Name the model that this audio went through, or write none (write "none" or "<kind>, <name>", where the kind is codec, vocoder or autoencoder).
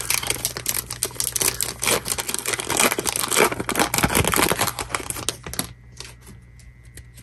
none